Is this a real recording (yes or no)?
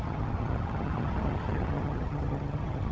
no